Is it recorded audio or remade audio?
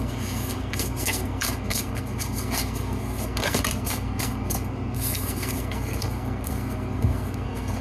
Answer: remade